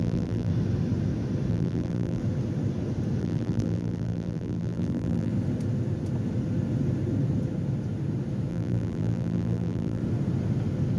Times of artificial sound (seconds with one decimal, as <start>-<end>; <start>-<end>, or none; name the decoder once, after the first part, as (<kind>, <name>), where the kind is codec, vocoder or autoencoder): 0.0-0.5 (vocoder, BigVGAN v2); 1.5-2.2; 3.2-5.3; 8.5-10.0